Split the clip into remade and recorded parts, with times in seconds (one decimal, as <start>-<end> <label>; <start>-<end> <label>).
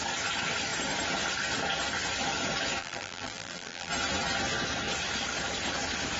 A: 0.0-2.8 recorded; 2.8-3.9 remade; 3.9-6.2 recorded